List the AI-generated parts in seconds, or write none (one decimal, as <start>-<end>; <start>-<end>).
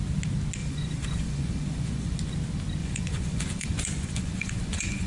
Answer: 0.6-2.2; 2.8-5.1